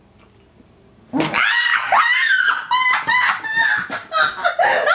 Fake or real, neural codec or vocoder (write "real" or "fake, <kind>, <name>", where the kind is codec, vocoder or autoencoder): real